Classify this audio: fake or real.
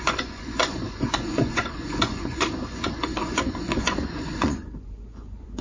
fake